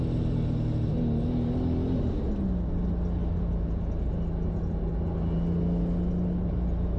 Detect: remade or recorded recorded